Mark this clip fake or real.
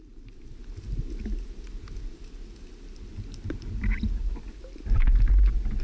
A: real